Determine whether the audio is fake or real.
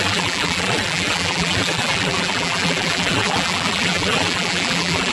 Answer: fake